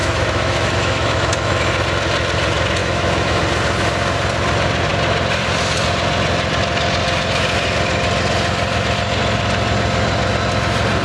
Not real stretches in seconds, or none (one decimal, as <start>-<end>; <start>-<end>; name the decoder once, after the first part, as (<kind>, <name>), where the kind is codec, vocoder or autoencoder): 0.0-1.5 (autoencoder, DAC-VAE); 2.8-3.4